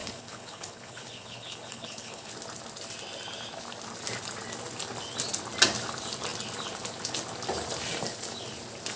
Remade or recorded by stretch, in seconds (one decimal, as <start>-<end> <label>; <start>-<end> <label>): 0.0-2.3 remade; 2.3-9.0 recorded